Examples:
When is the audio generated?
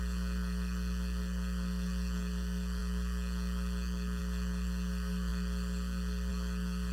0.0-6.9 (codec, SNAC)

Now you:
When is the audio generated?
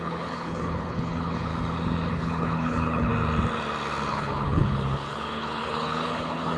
0.0-1.5 (codec, HILCodec); 2.1-3.1; 4.1-6.6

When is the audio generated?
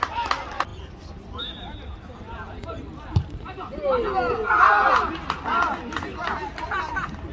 none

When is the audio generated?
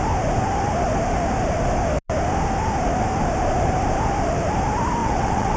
5.0-5.6 (vocoder, WaveNeXt)